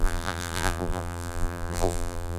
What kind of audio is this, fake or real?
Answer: fake